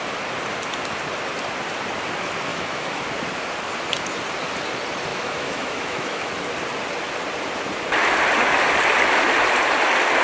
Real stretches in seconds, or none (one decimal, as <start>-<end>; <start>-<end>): 0.0-2.5; 3.0-5.1; 6.3-10.2